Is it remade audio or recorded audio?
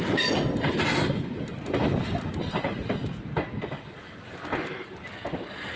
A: recorded